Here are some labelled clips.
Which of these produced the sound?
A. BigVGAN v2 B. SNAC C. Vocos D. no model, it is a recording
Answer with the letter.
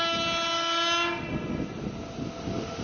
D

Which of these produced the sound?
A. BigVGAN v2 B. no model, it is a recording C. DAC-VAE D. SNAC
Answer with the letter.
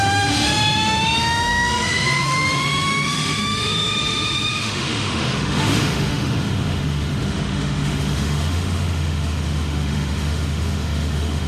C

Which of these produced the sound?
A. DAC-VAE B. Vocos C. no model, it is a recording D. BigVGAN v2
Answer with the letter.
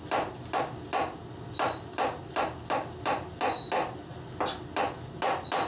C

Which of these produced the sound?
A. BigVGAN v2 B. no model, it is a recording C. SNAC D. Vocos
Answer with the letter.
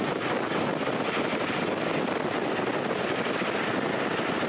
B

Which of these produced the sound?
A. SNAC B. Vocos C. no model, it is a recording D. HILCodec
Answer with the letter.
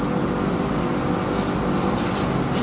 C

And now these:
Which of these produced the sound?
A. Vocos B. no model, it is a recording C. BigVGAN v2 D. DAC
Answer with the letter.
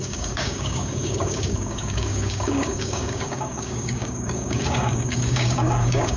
D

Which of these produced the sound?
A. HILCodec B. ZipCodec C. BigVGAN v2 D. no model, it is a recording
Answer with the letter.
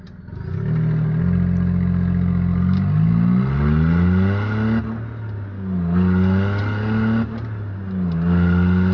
D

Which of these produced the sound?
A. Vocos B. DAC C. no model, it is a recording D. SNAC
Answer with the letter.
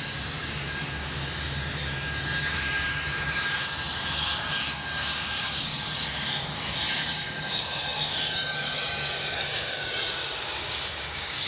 B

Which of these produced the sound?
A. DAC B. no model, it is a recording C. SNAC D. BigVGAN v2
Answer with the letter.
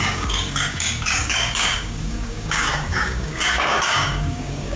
A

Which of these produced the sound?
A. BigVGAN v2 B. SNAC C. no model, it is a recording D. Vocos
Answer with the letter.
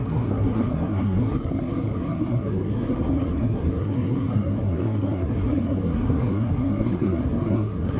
B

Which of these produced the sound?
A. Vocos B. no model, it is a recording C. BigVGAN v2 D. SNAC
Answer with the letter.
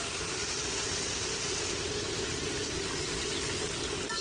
B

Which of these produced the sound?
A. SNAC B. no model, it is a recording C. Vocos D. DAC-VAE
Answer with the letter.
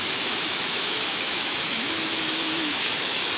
D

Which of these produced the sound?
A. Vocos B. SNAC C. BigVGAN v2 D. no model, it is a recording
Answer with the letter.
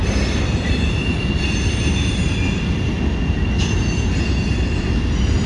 D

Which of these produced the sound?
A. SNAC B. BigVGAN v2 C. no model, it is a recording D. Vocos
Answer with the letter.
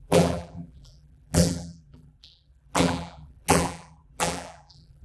B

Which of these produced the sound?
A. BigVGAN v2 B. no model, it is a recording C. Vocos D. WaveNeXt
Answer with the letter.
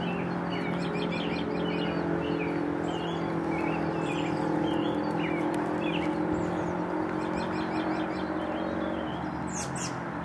B